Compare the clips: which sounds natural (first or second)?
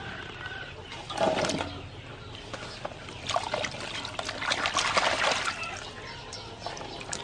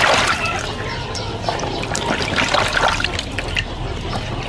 first